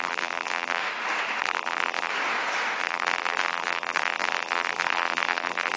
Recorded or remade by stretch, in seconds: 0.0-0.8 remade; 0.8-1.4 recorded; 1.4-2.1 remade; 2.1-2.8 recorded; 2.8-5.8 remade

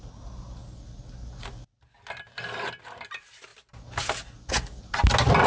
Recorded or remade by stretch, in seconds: 0.0-5.5 recorded

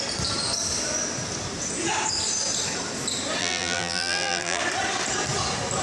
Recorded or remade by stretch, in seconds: 0.0-3.4 recorded; 3.4-4.6 remade; 4.6-5.8 recorded

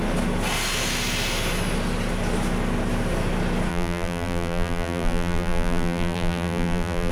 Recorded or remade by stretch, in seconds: 0.0-3.7 recorded; 3.7-7.1 remade

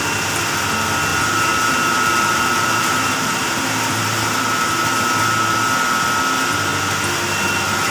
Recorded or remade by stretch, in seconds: 0.0-1.1 recorded; 1.1-4.4 remade; 4.4-7.9 recorded